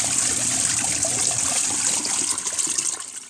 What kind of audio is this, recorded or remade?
recorded